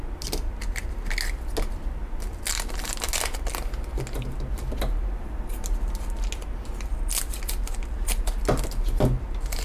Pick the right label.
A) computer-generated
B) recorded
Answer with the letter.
B